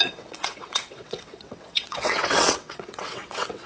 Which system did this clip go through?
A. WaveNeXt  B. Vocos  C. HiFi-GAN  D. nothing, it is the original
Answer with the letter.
A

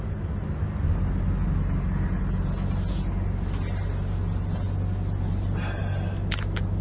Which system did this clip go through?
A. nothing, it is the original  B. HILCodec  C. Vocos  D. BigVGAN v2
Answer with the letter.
A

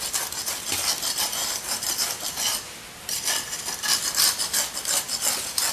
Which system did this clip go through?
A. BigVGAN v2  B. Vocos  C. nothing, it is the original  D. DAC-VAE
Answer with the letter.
C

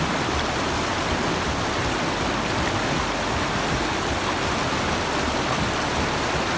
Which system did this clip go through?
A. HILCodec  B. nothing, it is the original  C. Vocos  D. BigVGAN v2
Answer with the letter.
B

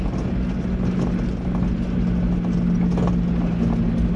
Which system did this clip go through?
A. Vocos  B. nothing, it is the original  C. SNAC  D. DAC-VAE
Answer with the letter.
B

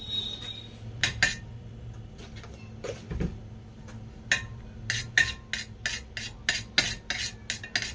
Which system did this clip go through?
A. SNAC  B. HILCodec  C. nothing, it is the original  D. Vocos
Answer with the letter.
C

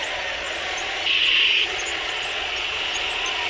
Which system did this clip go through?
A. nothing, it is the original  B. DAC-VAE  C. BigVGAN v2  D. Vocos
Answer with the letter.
D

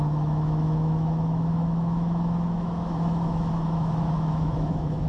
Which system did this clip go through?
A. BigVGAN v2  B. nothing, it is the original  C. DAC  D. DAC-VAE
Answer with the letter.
D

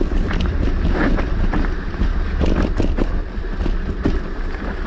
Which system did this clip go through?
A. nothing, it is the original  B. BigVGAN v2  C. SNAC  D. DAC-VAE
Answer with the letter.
B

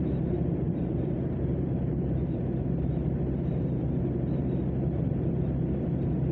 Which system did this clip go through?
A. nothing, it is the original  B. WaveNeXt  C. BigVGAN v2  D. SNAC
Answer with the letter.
C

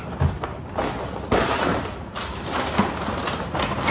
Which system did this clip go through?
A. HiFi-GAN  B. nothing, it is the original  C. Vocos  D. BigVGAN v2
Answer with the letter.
B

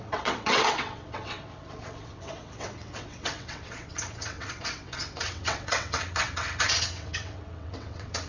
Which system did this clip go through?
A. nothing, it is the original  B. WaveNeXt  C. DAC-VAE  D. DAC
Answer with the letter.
B